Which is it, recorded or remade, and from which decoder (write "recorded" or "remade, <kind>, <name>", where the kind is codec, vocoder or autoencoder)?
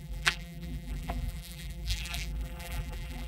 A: remade, vocoder, BigVGAN v2